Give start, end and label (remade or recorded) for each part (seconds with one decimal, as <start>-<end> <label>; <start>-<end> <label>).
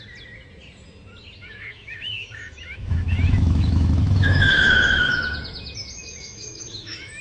0.0-1.4 recorded; 1.4-5.2 remade; 5.2-6.0 recorded; 6.0-7.2 remade